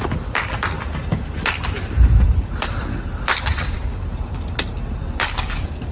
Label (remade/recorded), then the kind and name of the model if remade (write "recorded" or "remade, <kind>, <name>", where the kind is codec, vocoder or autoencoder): remade, vocoder, BigVGAN v2